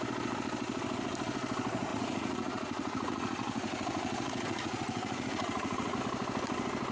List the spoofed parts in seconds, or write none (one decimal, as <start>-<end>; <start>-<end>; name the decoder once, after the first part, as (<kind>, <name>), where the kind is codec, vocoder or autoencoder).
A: 1.9-6.0 (vocoder, Vocos)